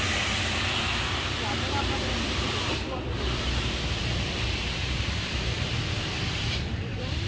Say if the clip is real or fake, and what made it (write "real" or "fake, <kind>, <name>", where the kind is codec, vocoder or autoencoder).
fake, vocoder, BigVGAN v2